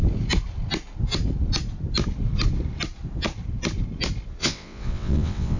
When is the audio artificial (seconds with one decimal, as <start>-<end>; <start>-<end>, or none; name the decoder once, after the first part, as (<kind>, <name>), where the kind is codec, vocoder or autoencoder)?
4.4-5.6 (vocoder, WaveNeXt)